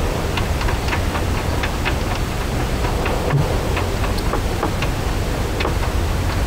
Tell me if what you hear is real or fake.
real